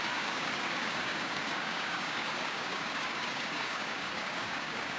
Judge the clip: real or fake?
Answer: fake